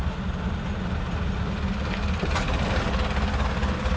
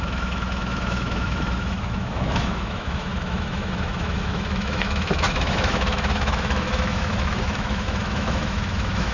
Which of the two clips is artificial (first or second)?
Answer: second